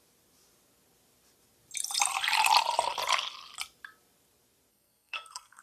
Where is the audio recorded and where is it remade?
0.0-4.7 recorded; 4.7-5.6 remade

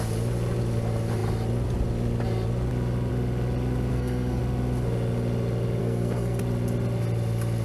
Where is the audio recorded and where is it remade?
0.0-3.9 recorded; 3.9-4.4 remade; 4.4-5.8 recorded; 5.8-6.4 remade; 6.4-7.6 recorded